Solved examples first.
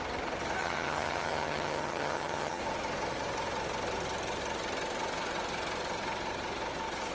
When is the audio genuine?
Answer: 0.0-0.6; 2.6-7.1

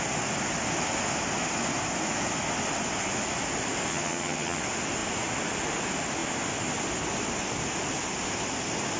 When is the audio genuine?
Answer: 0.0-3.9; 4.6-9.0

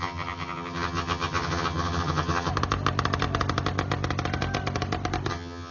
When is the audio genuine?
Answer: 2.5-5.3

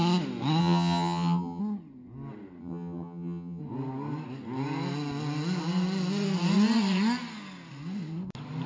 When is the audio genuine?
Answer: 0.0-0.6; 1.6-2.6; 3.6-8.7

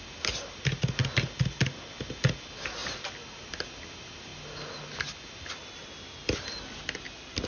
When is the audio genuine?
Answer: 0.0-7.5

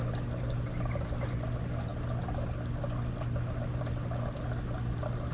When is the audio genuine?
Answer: 0.0-5.3

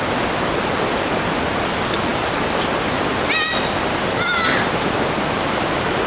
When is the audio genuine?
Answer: 0.0-6.1